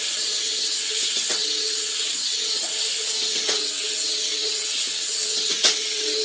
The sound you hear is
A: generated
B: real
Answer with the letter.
A